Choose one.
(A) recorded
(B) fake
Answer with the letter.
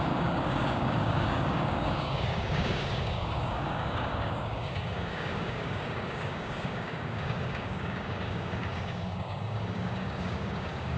B